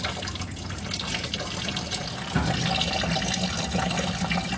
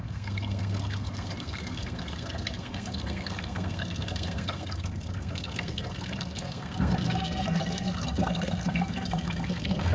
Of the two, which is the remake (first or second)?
second